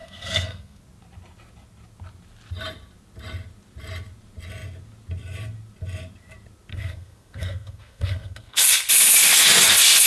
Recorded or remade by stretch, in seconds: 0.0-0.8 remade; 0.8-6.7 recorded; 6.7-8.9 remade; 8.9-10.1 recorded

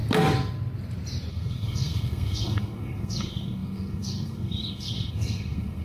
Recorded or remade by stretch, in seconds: 0.0-1.3 recorded; 1.3-5.8 remade

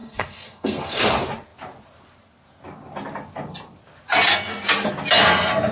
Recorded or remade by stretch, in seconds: 0.0-1.0 remade; 1.0-5.7 recorded

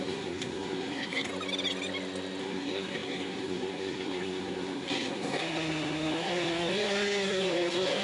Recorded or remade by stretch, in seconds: 0.0-1.3 remade; 1.3-2.4 recorded; 2.4-8.0 remade

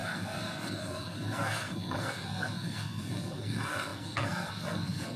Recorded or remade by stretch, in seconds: 0.0-5.2 remade

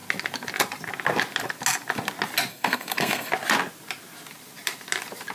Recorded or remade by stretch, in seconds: 0.0-2.5 recorded; 2.5-3.3 remade; 3.3-5.3 recorded

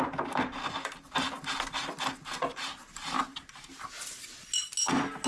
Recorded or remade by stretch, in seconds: 0.0-5.3 recorded